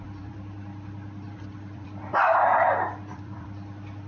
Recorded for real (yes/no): no